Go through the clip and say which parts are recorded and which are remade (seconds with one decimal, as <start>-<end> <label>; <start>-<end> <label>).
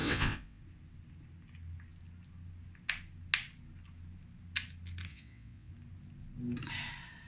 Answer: 0.0-0.6 remade; 0.6-5.1 recorded; 5.1-5.7 remade; 5.7-7.3 recorded